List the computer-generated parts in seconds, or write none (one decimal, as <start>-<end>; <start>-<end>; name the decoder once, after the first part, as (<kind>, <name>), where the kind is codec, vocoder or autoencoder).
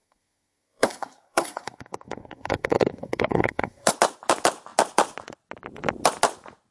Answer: 0.0-3.9 (codec, SNAC)